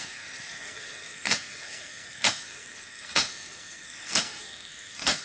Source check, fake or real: fake